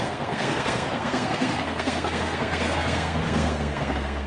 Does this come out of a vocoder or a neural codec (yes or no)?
yes